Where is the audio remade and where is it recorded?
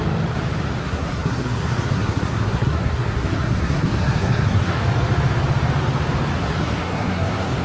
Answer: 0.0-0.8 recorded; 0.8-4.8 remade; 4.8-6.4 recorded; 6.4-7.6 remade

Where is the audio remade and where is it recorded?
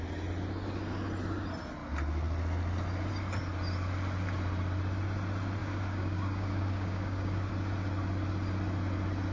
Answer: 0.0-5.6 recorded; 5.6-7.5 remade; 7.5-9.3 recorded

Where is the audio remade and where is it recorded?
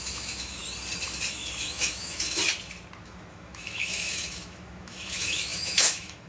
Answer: 0.0-0.6 remade; 0.6-1.3 recorded; 1.3-2.4 remade; 2.4-3.0 recorded; 3.0-6.3 remade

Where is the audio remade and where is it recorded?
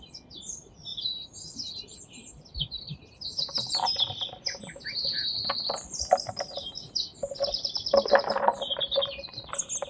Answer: 0.0-0.9 recorded; 0.9-4.3 remade; 4.3-7.1 recorded; 7.1-9.5 remade; 9.5-9.9 recorded